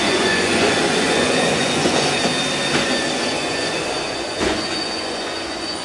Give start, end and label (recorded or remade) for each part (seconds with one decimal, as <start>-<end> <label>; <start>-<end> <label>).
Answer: 0.0-2.3 remade; 2.3-2.8 recorded; 2.8-5.8 remade